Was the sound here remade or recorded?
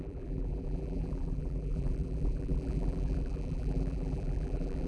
remade